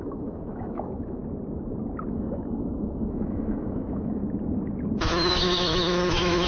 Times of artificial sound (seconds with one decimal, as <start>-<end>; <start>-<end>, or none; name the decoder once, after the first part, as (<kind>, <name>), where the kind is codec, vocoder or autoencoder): 0.0-1.2 (autoencoder, DAC-VAE); 2.1-4.2; 5.3-6.5